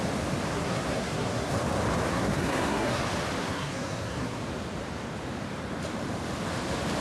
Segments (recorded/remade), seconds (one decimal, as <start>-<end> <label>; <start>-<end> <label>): 0.0-0.5 recorded; 0.5-1.5 remade; 1.5-2.1 recorded; 2.1-3.0 remade; 3.0-3.4 recorded; 3.4-4.4 remade; 4.4-7.0 recorded